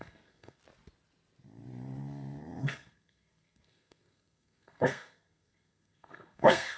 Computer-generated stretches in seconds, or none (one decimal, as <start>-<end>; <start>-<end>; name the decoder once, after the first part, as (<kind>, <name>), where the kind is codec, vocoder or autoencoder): 0.0-0.6 (codec, SNAC); 2.6-6.8